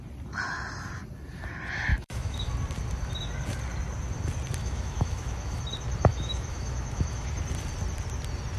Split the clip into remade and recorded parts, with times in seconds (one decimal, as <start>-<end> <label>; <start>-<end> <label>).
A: 0.0-1.9 recorded; 1.9-2.5 remade; 2.5-4.6 recorded; 4.6-5.6 remade; 5.6-6.1 recorded; 6.1-7.3 remade; 7.3-8.6 recorded